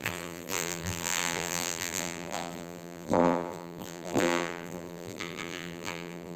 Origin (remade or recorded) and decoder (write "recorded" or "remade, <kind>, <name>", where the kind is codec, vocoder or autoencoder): remade, vocoder, BigVGAN v2